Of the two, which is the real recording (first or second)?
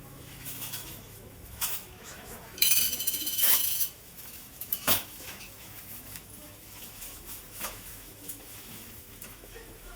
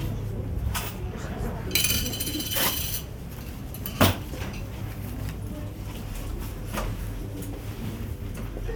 second